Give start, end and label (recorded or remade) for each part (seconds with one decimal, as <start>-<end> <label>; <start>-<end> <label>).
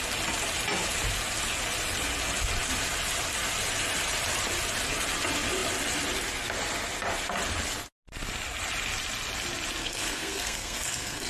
0.0-9.8 recorded; 9.8-11.3 remade